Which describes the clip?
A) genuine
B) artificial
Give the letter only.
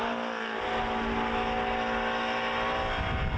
A